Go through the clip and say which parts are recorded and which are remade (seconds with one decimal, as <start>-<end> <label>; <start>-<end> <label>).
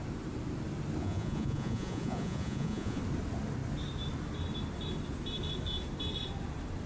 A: 0.0-1.0 recorded; 1.0-3.0 remade; 3.0-6.9 recorded